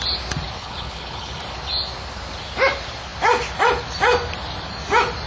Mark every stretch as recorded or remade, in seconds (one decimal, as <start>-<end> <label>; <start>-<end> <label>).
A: 0.0-0.6 recorded; 0.6-1.4 remade; 1.4-5.3 recorded